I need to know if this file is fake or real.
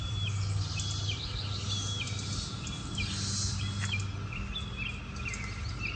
real